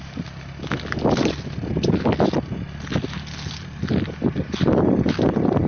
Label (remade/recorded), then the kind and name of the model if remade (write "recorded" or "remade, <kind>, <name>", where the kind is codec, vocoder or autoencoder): recorded